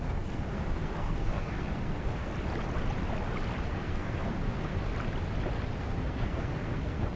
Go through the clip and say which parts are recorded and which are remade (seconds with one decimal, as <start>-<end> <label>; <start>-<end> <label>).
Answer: 0.0-2.3 remade; 2.3-3.6 recorded; 3.6-4.9 remade; 4.9-5.8 recorded; 5.8-7.2 remade